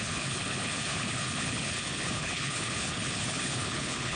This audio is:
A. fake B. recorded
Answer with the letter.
A